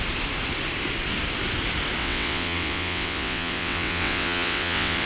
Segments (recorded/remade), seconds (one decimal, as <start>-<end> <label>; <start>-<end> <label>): 0.0-2.0 recorded; 2.0-5.1 remade